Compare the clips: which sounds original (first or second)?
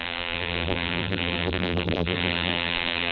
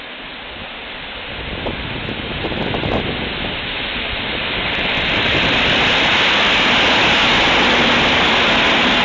second